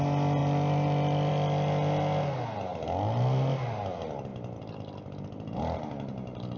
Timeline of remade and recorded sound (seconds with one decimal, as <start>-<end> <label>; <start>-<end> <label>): 0.0-6.6 recorded